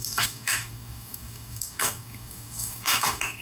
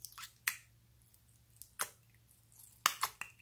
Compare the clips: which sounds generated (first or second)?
first